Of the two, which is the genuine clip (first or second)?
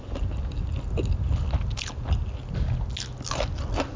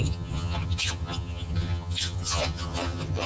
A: first